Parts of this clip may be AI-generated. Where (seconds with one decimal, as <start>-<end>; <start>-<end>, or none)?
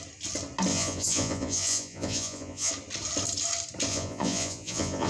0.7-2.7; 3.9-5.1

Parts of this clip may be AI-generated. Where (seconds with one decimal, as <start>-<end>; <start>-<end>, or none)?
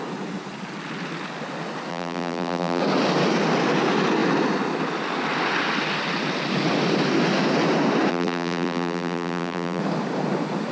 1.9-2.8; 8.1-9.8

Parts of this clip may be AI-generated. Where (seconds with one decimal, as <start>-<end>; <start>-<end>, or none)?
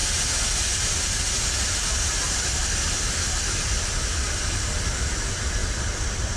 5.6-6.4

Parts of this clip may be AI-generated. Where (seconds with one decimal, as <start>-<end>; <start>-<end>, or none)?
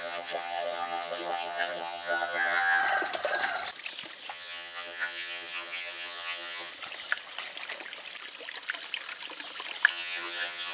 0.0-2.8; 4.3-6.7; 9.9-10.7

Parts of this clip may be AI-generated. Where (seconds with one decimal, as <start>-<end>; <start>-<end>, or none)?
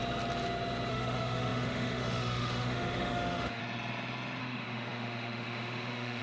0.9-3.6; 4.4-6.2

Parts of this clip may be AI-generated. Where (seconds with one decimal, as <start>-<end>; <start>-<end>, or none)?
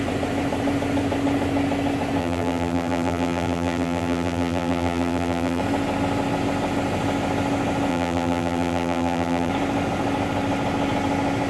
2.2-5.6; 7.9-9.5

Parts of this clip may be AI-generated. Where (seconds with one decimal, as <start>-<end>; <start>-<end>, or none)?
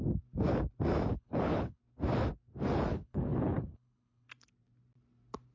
1.1-1.8; 2.9-4.3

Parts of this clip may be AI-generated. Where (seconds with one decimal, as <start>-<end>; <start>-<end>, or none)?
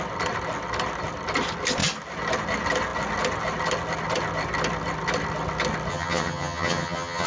5.9-7.3